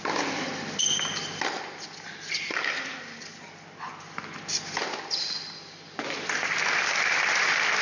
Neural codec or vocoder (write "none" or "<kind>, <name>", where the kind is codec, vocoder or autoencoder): none